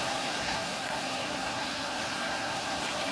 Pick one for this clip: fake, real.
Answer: fake